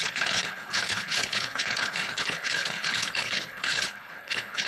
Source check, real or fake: fake